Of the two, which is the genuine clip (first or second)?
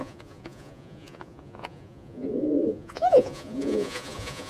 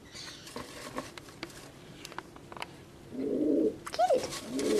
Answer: second